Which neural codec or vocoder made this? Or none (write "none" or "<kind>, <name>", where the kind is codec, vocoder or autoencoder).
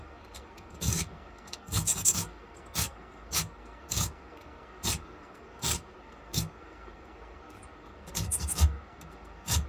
codec, SNAC